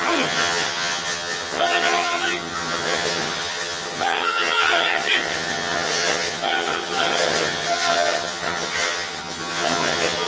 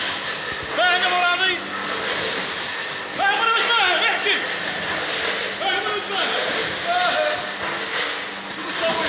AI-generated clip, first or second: first